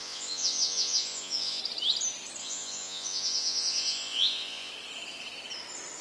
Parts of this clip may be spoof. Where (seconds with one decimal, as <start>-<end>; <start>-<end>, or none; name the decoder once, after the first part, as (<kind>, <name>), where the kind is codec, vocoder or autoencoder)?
0.0-1.6 (vocoder, Vocos); 2.4-4.7